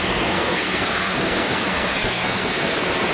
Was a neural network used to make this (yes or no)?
yes